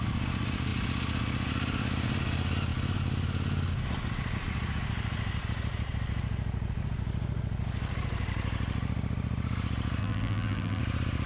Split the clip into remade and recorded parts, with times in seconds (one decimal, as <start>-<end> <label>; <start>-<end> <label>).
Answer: 0.0-10.0 recorded; 10.0-10.8 remade; 10.8-11.3 recorded